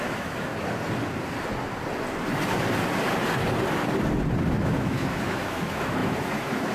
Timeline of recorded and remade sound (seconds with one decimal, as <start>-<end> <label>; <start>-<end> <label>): 0.0-0.5 remade; 0.5-4.5 recorded; 4.5-6.7 remade